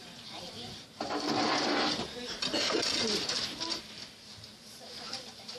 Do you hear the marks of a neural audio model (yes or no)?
yes